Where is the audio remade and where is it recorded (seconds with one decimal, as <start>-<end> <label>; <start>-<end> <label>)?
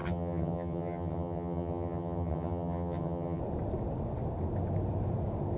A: 0.0-3.4 remade; 3.4-5.6 recorded